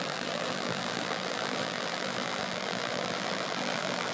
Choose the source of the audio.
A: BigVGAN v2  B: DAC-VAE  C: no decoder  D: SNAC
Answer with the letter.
A